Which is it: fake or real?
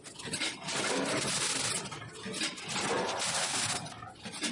real